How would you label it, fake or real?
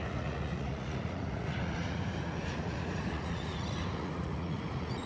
fake